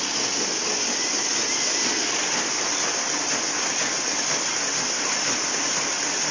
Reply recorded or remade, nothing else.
recorded